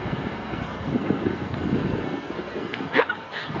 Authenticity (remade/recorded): remade